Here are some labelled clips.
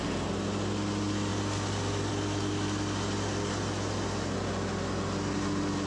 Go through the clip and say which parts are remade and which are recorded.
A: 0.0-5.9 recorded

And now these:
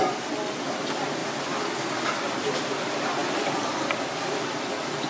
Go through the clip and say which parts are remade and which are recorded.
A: 0.0-5.1 recorded